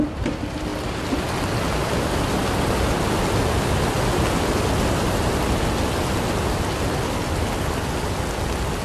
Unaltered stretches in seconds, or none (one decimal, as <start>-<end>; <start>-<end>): 0.0-8.8